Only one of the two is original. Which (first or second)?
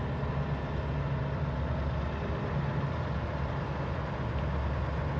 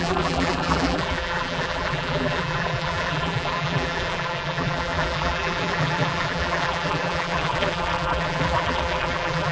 first